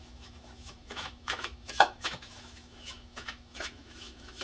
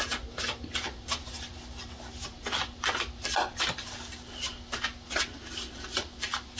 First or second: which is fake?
first